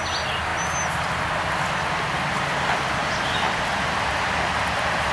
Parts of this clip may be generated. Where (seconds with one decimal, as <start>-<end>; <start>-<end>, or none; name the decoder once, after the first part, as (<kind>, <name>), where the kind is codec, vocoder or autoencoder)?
none